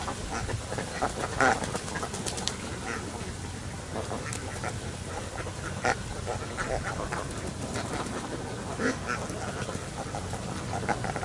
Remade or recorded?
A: recorded